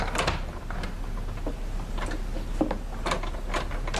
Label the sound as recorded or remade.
recorded